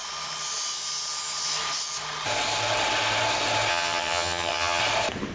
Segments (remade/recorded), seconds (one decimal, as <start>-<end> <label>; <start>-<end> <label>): 0.0-3.7 recorded; 3.7-4.8 remade; 4.8-5.3 recorded